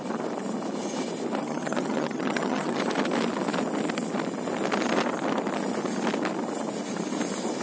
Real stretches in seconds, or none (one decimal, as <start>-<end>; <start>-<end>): 0.0-1.4; 2.8-7.6